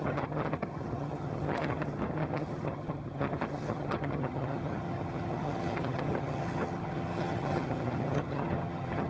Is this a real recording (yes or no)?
no